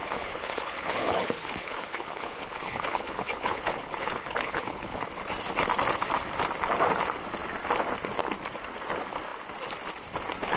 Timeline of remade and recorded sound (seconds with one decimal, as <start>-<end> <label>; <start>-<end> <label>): 0.0-5.0 remade; 5.0-10.6 recorded